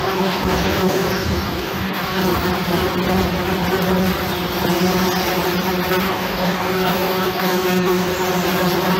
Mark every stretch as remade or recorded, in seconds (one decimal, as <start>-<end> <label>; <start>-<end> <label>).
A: 0.0-2.2 remade; 2.2-6.0 recorded; 6.0-8.1 remade; 8.1-9.0 recorded